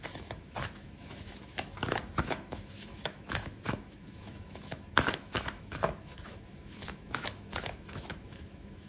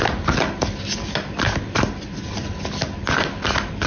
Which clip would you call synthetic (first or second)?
first